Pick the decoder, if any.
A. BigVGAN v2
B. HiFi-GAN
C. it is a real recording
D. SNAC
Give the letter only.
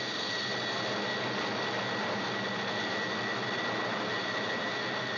C